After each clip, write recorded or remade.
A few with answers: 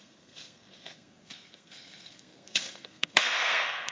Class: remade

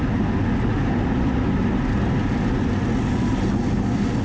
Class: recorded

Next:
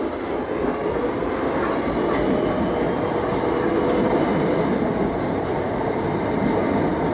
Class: recorded